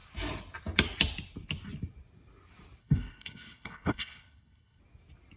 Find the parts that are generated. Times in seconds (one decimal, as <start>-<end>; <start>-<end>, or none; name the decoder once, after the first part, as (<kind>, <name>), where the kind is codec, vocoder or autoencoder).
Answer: 2.8-4.8 (codec, HILCodec)

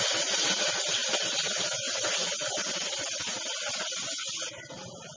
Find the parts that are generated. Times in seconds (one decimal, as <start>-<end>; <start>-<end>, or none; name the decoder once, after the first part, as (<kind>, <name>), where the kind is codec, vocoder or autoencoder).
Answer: none